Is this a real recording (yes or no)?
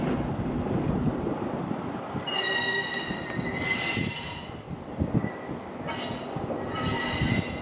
yes